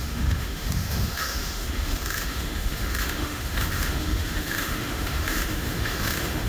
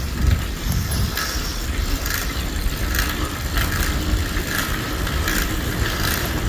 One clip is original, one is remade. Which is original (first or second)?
second